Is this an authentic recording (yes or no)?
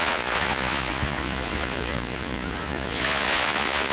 no